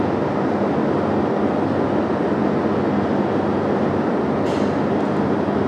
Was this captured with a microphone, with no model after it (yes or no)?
yes